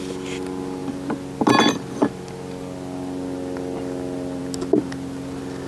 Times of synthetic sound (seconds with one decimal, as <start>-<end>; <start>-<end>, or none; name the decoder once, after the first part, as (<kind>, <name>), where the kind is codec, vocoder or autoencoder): none